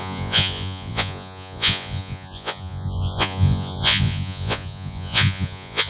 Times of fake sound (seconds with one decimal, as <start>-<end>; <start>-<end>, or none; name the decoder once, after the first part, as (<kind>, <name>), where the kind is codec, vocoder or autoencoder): 0.0-5.9 (vocoder, Vocos)